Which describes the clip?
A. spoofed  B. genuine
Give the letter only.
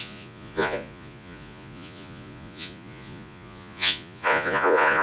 A